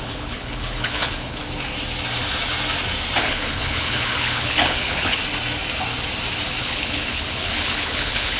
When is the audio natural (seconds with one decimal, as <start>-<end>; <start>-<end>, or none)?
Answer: 1.4-3.2; 5.2-6.6